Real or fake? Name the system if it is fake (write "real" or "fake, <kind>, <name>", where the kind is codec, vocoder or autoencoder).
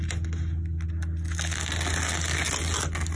real